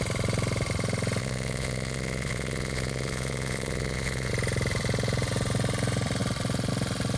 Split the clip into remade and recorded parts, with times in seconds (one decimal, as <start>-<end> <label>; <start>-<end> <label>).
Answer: 0.0-1.2 recorded; 1.2-4.3 remade; 4.3-7.2 recorded